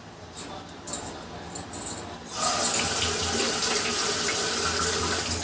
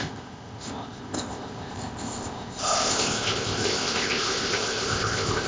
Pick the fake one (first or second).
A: second